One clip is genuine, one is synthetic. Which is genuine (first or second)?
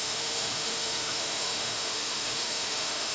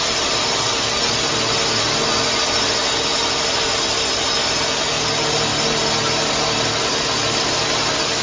second